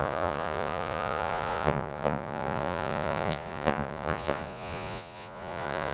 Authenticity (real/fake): fake